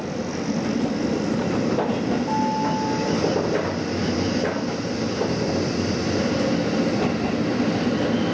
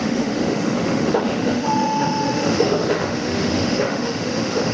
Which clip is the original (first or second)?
first